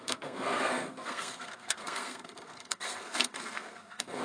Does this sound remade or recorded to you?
remade